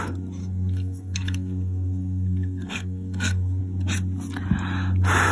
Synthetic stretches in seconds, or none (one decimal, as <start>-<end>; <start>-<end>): 0.4-3.6